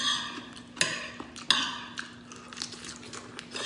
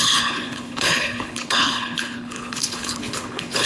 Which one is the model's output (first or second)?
second